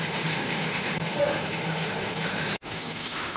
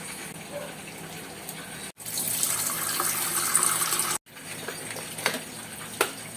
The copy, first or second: first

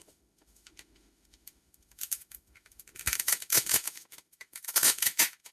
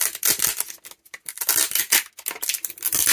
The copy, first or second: first